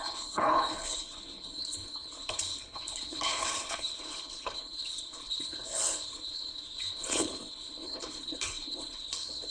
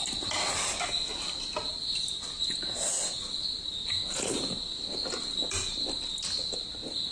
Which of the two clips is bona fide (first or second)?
second